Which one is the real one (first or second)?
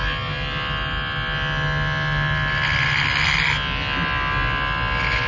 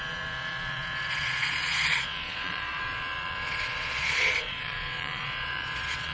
first